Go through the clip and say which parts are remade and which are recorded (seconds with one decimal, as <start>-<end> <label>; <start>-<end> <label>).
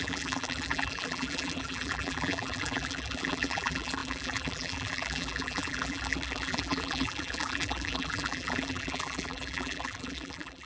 0.0-10.7 remade